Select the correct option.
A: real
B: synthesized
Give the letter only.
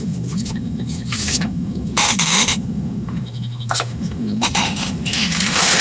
B